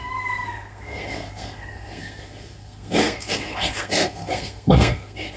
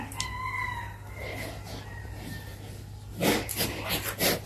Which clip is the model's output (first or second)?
first